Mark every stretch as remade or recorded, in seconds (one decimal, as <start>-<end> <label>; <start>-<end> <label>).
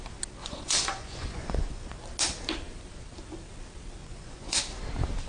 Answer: 0.0-0.4 recorded; 0.4-2.0 remade; 2.0-4.0 recorded; 4.0-4.6 remade; 4.6-5.3 recorded